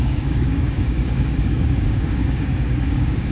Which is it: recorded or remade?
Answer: remade